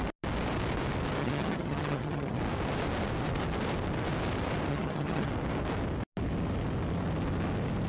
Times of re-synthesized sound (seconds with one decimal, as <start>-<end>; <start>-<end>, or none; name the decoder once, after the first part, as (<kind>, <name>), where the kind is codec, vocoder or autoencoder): 1.2-2.4 (vocoder, HiFi-GAN); 4.7-5.3